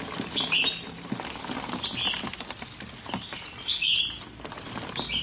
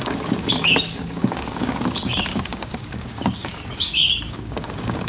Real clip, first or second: first